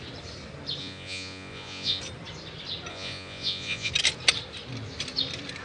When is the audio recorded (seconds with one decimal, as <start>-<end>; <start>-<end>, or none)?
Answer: 0.0-0.8; 2.0-2.9; 3.9-5.6